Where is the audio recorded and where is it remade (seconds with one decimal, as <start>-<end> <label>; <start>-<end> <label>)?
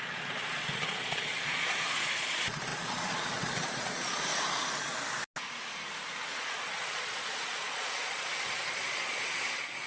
0.0-4.3 remade; 4.3-6.2 recorded; 6.2-9.9 remade